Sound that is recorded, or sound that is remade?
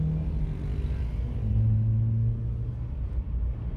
recorded